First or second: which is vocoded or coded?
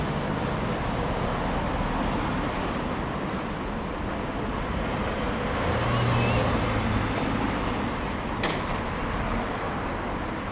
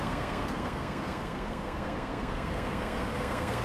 second